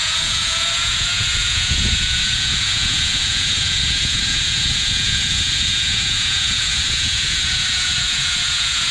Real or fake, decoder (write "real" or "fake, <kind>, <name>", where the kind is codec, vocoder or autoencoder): fake, vocoder, Vocos